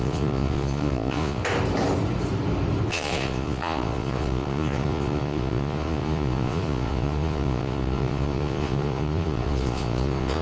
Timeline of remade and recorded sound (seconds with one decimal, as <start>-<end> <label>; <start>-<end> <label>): 0.0-1.4 remade; 1.4-2.9 recorded; 2.9-10.4 remade